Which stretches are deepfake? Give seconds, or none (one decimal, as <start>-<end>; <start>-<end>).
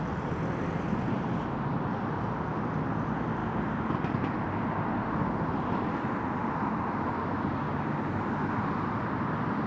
none